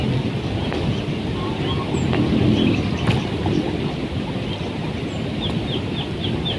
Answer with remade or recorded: recorded